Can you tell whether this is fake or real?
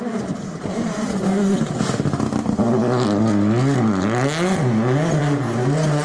real